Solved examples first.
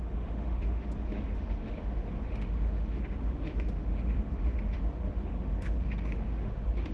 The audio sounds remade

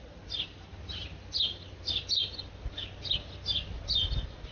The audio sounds recorded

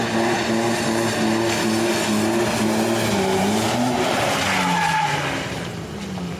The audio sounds recorded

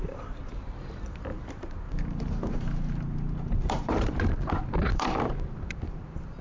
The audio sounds remade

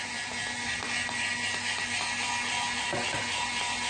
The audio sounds recorded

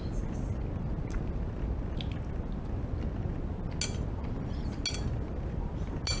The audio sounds recorded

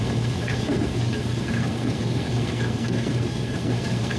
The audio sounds remade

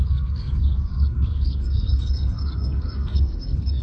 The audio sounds remade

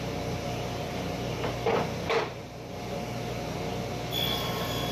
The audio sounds recorded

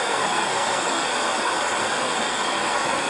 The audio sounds remade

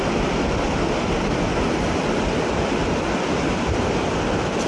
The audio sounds recorded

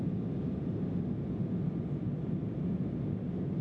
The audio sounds recorded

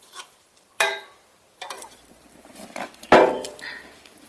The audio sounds remade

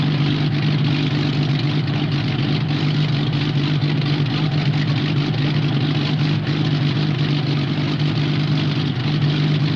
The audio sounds recorded